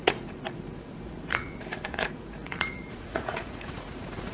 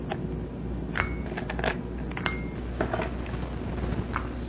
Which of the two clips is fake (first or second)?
first